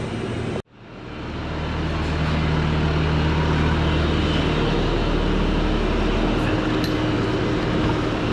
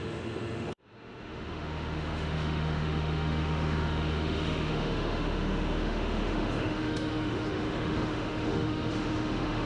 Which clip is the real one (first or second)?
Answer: first